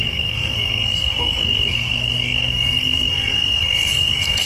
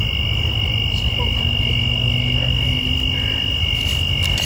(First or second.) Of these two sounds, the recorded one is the second